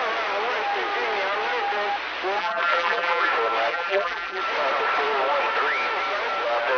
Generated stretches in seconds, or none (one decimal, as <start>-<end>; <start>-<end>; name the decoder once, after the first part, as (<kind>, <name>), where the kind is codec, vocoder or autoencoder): 2.4-3.3 (vocoder, BigVGAN v2); 3.7-4.4

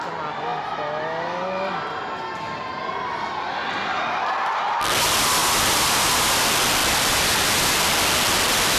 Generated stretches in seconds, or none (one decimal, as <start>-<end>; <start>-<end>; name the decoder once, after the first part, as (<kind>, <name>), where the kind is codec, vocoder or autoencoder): 5.4-6.0 (vocoder, BigVGAN v2)

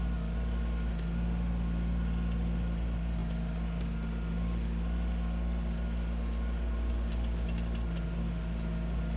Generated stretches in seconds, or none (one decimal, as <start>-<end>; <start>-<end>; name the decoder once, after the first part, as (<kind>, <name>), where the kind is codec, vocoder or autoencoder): none

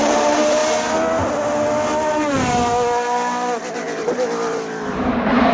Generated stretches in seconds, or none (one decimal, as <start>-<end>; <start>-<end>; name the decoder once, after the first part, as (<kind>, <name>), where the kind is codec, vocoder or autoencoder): 0.0-0.6 (vocoder, BigVGAN v2); 3.7-5.5

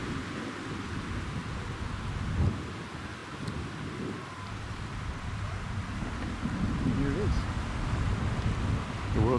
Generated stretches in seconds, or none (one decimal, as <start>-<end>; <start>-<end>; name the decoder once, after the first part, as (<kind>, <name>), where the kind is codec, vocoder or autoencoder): none

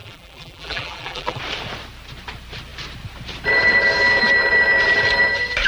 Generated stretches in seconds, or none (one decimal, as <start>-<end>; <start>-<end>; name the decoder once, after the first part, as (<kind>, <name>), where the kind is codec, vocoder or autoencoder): 0.0-1.4 (vocoder, BigVGAN v2)

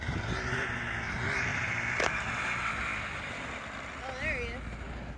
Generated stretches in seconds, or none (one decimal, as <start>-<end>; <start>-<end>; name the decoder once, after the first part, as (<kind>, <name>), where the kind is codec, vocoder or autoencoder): 2.9-3.5 (vocoder, BigVGAN v2)

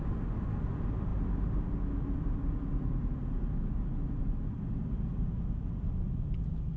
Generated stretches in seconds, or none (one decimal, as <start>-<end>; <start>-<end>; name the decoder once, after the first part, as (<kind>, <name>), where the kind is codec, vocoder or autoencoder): none